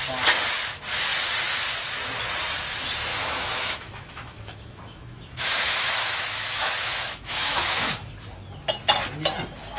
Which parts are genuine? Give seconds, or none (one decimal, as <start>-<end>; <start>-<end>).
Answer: 0.0-3.1; 8.1-9.8